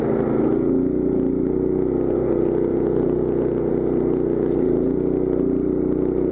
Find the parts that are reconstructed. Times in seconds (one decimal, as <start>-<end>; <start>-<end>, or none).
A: 2.7-3.7